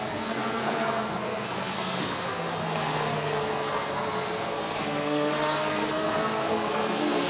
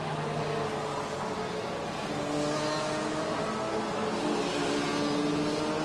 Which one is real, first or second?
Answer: second